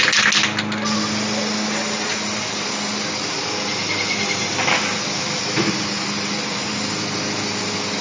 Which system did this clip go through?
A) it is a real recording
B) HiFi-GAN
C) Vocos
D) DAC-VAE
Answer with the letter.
A